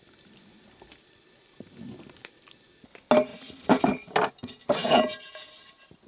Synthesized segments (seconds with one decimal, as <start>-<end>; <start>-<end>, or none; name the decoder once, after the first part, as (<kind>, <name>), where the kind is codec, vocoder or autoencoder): 4.8-5.5 (vocoder, Vocos)